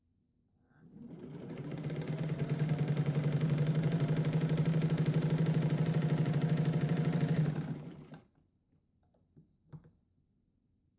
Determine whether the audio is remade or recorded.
remade